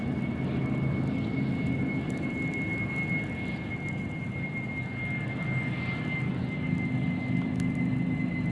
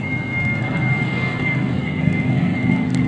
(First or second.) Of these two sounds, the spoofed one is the second